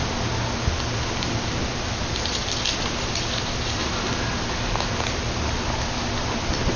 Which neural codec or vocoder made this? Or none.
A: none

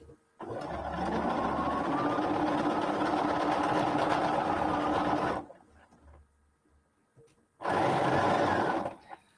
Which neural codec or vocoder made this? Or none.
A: none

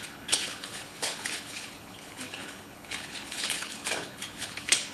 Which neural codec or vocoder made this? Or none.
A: codec, HILCodec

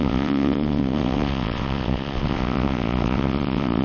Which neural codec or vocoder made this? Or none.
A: vocoder, WaveNeXt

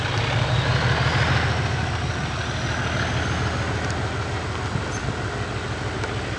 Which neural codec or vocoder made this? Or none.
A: none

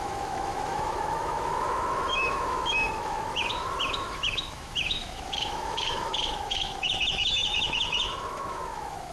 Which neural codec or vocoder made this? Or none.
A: autoencoder, DAC-VAE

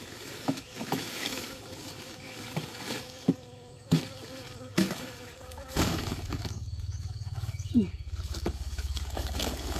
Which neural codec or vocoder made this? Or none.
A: codec, DAC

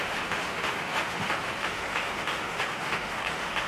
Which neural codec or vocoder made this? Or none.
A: autoencoder, DAC-VAE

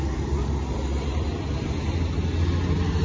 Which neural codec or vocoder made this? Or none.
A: none